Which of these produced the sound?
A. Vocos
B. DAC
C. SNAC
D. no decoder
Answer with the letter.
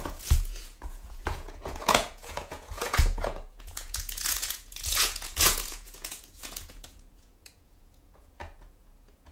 A